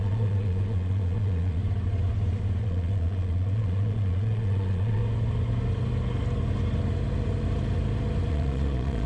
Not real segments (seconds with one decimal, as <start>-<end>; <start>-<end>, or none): 0.0-1.6; 2.6-5.0; 8.3-9.1